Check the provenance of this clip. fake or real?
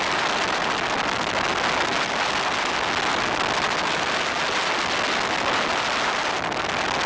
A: real